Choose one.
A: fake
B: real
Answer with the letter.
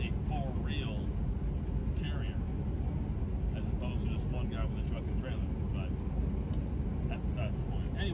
B